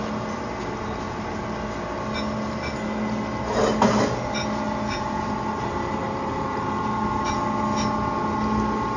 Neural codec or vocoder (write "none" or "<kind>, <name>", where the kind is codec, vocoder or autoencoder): none